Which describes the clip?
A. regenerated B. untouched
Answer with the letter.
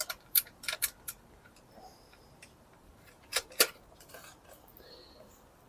A